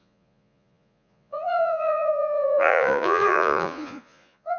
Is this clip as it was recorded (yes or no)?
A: no